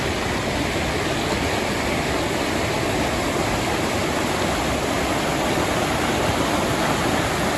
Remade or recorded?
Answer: recorded